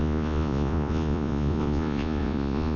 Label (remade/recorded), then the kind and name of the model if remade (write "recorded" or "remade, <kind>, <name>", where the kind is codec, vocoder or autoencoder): remade, vocoder, Vocos